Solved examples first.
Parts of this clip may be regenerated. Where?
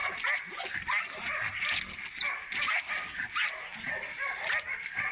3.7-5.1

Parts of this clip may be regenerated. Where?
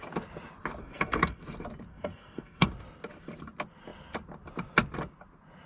0.8-1.4; 1.9-2.7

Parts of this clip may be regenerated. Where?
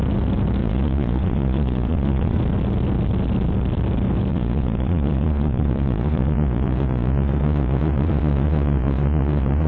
0.6-2.4; 4.3-9.7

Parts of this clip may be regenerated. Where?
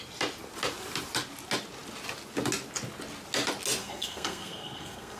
3.8-5.2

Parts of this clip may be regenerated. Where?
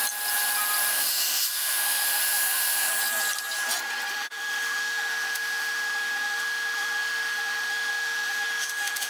0.9-2.9; 4.1-9.1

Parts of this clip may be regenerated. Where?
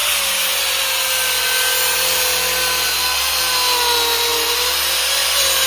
none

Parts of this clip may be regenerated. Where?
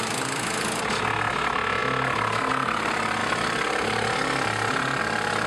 none